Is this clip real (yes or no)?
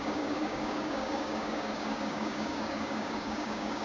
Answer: no